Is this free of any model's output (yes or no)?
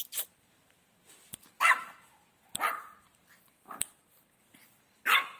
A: yes